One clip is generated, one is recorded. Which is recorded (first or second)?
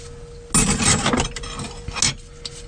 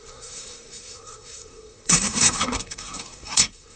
first